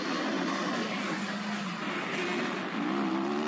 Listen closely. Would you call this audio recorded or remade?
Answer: recorded